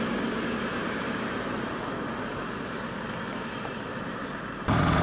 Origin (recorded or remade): remade